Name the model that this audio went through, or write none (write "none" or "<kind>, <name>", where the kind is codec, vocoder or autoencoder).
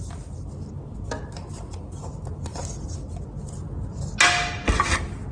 none